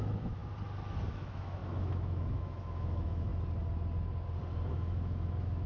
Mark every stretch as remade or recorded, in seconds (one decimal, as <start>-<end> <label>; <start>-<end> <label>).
0.0-0.4 remade; 0.4-1.1 recorded; 1.1-3.3 remade; 3.3-4.7 recorded; 4.7-5.7 remade